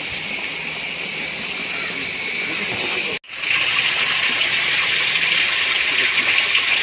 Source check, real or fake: real